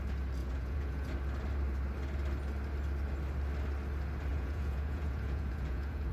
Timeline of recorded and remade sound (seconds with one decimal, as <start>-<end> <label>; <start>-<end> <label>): 0.0-0.4 recorded; 0.4-1.1 remade; 1.1-4.3 recorded; 4.3-6.1 remade

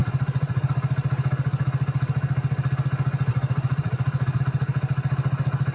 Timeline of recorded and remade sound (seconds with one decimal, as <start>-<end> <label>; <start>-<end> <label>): 0.0-0.7 remade; 0.7-3.3 recorded; 3.3-4.4 remade; 4.4-5.7 recorded

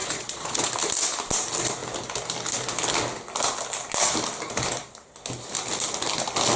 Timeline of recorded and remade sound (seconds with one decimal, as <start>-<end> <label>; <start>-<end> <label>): 0.0-0.7 remade; 0.7-6.6 recorded

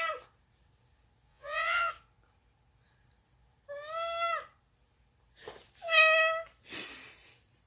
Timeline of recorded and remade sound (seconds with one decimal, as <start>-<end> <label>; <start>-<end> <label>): 0.0-1.3 recorded; 1.3-1.9 remade; 1.9-7.7 recorded

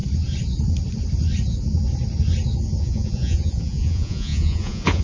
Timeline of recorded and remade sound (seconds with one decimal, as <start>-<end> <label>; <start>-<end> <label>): 0.0-2.8 recorded; 2.8-5.0 remade

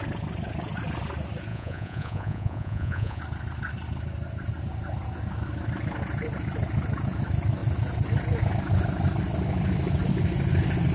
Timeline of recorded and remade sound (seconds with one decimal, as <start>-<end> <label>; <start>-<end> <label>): 0.0-1.5 recorded; 1.5-3.2 remade; 3.2-10.9 recorded

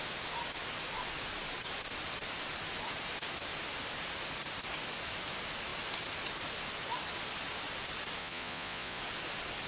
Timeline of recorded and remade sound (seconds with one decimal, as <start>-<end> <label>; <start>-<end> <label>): 0.0-8.2 recorded; 8.2-9.0 remade; 9.0-9.7 recorded

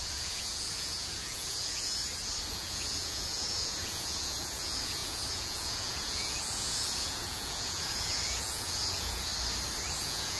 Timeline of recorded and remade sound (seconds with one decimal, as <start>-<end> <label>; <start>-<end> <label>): 0.0-2.0 remade; 2.0-2.5 recorded; 2.5-9.3 remade; 9.3-10.0 recorded; 10.0-10.4 remade